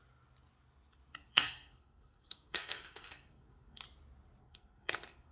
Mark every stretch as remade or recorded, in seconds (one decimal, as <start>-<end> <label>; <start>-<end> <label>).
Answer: 0.0-1.3 recorded; 1.3-3.8 remade; 3.8-4.4 recorded; 4.4-5.3 remade